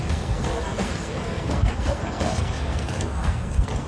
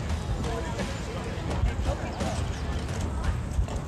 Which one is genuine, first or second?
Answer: second